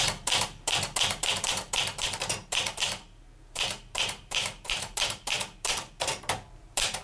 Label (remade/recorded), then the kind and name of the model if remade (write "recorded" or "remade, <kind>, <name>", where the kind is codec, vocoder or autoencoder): remade, vocoder, BigVGAN v2